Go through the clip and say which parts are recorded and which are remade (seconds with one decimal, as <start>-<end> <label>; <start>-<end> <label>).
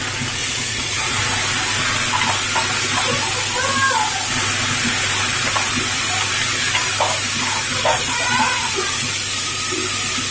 0.0-0.4 recorded; 0.4-1.3 remade; 1.3-7.9 recorded; 7.9-8.9 remade; 8.9-10.3 recorded